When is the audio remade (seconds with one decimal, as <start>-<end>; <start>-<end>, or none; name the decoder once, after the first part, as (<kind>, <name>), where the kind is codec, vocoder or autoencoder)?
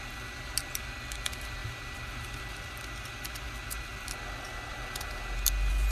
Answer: none